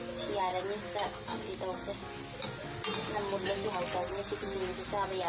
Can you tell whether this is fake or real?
real